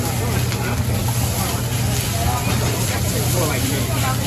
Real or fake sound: real